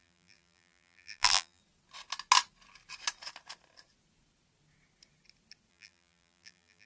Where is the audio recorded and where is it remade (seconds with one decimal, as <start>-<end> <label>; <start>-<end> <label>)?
0.0-1.6 remade; 1.6-5.7 recorded; 5.7-6.9 remade